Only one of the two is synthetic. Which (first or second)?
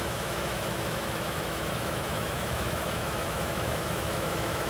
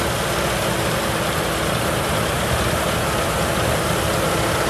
first